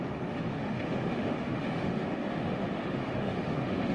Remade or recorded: remade